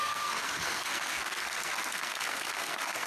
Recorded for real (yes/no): no